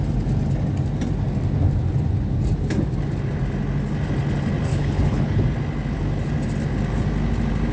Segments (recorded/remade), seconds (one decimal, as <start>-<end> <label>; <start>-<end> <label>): 0.0-4.7 recorded; 4.7-5.4 remade; 5.4-7.7 recorded